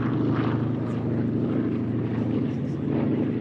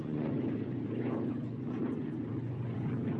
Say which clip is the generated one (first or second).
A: second